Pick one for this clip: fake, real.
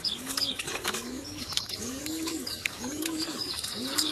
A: fake